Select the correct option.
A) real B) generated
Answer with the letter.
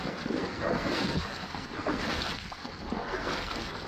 B